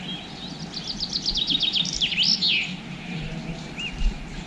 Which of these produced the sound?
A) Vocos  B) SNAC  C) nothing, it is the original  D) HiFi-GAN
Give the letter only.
C